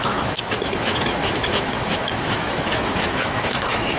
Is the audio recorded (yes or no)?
no